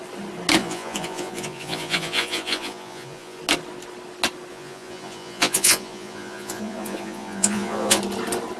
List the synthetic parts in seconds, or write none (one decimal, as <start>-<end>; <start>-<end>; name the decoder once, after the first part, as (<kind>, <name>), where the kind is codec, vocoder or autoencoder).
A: 0.6-3.4 (vocoder, Vocos); 4.5-8.0